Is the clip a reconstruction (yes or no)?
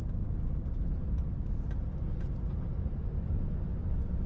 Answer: no